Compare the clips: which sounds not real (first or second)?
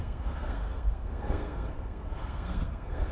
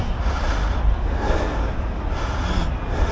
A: first